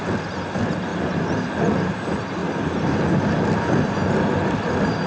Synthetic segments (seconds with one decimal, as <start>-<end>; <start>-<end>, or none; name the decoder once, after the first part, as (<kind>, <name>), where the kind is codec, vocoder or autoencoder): none